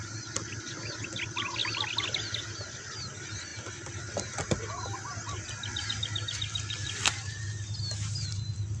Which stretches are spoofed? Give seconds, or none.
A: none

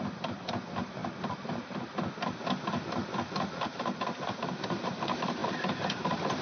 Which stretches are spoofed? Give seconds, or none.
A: 0.0-1.0; 4.8-6.4

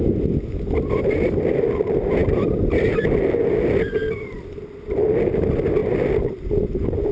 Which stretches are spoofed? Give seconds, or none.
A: 2.2-3.2; 4.0-5.2

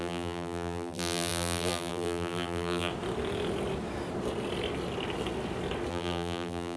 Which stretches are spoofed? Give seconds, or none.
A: 0.0-2.9; 5.9-6.8

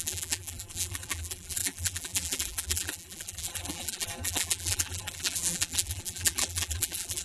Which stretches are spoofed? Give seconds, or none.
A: 0.0-7.2

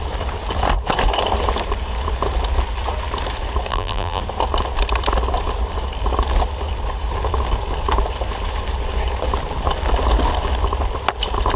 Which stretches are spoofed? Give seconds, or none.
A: 3.7-4.2